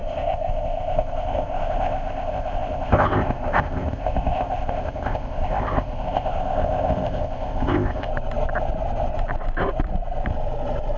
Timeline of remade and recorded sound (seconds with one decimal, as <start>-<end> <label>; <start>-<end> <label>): 0.0-8.1 remade; 8.1-11.0 recorded